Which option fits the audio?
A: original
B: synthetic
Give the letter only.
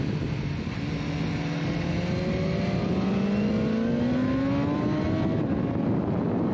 A